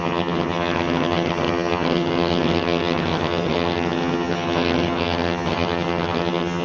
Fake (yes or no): yes